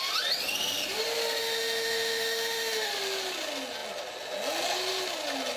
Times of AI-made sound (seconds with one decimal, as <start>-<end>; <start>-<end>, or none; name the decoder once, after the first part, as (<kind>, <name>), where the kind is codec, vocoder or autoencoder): 1.4-2.9 (autoencoder, DAC-VAE)